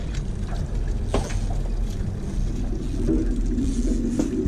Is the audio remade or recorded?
recorded